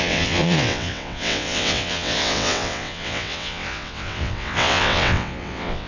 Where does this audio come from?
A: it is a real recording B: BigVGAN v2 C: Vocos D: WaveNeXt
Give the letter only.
D